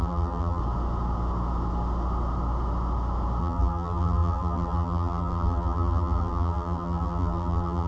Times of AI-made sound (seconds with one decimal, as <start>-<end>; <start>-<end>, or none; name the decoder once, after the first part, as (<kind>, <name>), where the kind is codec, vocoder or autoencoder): 0.0-0.6 (vocoder, BigVGAN v2); 3.4-7.9